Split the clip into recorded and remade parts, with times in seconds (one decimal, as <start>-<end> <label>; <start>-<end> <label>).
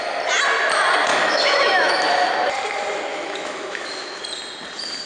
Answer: 0.0-1.1 recorded; 1.1-1.9 remade; 1.9-3.1 recorded; 3.1-4.2 remade; 4.2-5.1 recorded